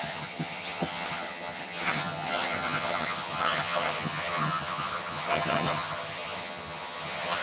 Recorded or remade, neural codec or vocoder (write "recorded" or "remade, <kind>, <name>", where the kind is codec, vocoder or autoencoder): remade, vocoder, HiFi-GAN